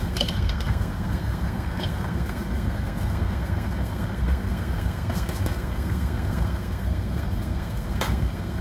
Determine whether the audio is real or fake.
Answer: fake